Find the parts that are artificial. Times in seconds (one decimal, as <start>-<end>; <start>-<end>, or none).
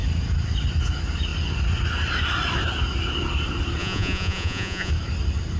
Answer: 3.8-4.9